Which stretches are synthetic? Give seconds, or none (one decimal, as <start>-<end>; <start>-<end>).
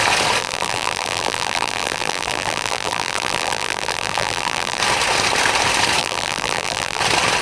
0.4-4.8; 6.0-7.0